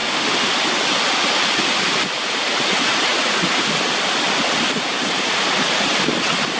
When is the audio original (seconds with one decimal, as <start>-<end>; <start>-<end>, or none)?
0.5-6.6